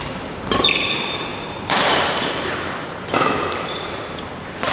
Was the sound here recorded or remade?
remade